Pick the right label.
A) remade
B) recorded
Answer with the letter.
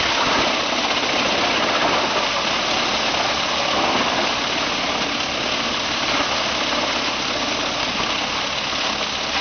B